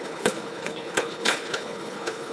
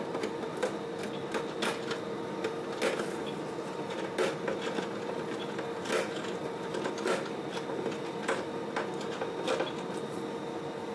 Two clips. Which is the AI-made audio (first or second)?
first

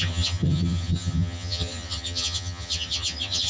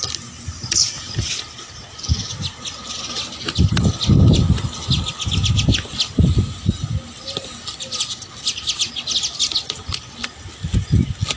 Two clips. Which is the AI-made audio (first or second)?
first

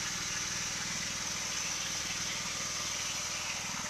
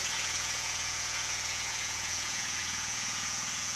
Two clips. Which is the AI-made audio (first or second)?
second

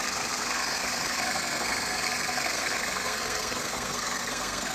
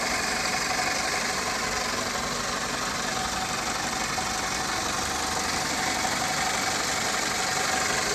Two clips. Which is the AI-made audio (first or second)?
first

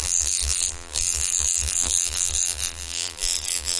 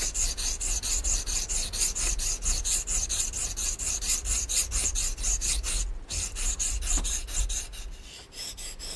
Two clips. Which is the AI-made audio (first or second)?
first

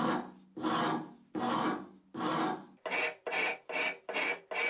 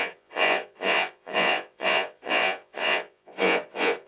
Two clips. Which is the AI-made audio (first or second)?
second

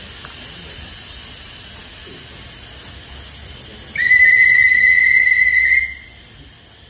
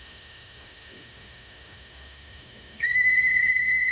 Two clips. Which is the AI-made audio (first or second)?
second